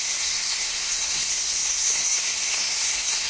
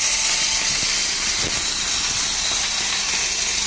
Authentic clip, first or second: second